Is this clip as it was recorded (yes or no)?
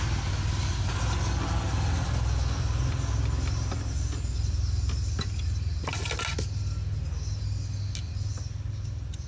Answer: yes